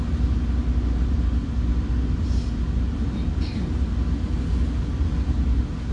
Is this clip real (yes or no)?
yes